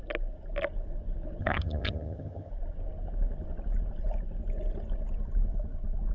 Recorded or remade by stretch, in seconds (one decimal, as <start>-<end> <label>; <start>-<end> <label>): 0.0-1.4 recorded; 1.4-2.5 remade; 2.5-6.1 recorded